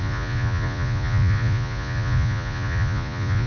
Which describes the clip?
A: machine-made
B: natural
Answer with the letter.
A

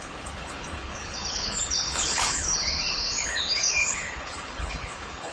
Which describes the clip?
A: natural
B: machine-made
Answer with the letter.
B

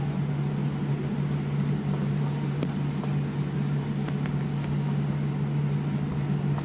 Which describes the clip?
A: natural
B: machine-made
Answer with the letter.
A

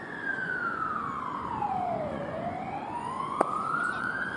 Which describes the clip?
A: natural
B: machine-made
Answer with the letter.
B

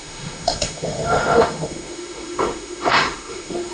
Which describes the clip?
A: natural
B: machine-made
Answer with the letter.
B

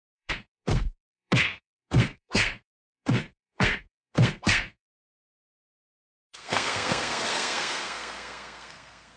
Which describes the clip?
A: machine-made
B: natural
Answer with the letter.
A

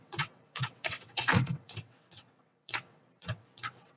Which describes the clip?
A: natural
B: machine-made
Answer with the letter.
B